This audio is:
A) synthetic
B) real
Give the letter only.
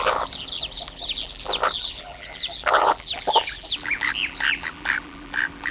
A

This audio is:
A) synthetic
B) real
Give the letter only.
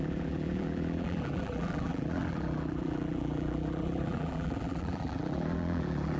A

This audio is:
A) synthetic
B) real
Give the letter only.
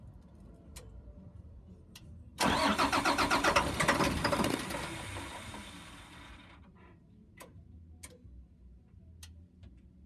B